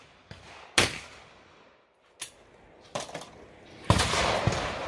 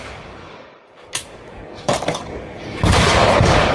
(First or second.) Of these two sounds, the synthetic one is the second